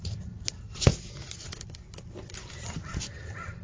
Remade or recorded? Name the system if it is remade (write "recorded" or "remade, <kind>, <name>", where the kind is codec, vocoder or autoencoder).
recorded